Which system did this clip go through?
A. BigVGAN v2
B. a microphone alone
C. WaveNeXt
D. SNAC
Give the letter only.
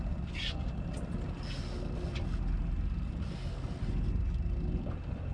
B